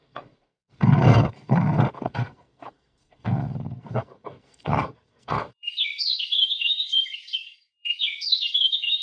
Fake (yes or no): yes